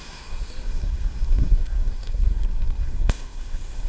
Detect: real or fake fake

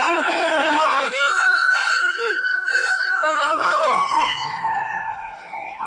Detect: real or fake fake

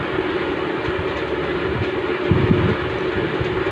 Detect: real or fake real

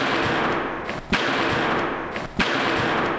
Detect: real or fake real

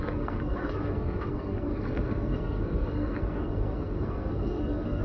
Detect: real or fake fake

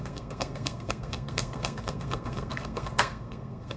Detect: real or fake fake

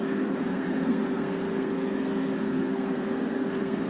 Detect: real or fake fake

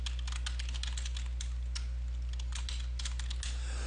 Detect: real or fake real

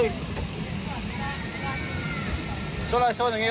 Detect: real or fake real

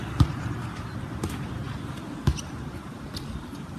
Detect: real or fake real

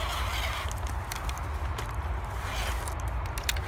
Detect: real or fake real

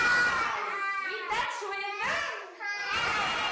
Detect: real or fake real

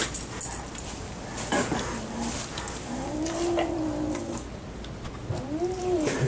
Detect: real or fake real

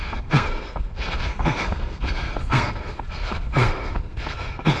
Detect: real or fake fake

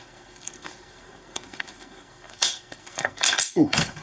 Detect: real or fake fake